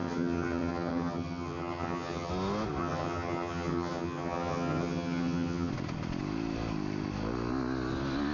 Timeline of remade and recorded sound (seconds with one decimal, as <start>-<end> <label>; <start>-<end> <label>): 0.0-2.3 remade; 2.3-2.8 recorded; 2.8-5.7 remade; 5.7-8.3 recorded